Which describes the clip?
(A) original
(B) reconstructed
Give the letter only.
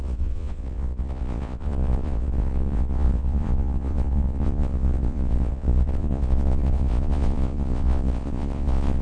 B